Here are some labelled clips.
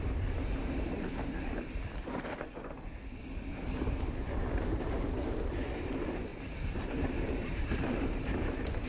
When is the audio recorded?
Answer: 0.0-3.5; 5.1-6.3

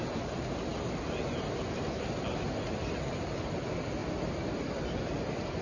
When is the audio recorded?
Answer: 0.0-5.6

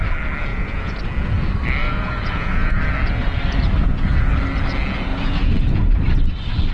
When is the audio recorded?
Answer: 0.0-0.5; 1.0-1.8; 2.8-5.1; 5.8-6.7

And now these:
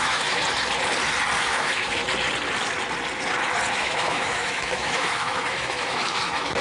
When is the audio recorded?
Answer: 0.4-1.4; 2.0-3.7